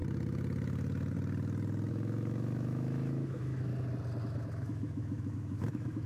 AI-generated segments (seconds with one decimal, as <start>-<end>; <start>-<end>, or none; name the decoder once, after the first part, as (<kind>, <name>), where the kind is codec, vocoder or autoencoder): 1.9-3.7 (autoencoder, DAC-VAE); 4.2-6.1